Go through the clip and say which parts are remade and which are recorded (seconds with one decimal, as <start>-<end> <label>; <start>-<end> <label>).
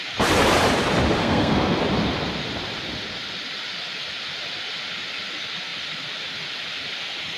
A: 0.0-1.2 recorded; 1.2-1.8 remade; 1.8-7.4 recorded